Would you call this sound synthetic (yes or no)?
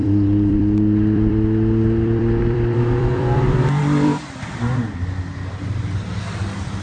yes